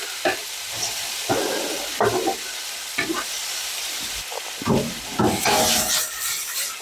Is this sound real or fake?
fake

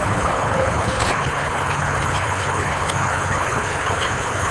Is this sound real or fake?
fake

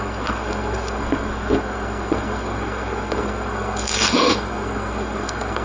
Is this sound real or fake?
fake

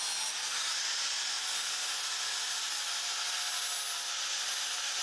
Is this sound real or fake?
real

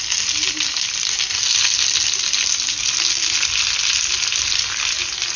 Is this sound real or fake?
real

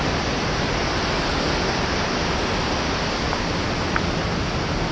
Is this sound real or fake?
real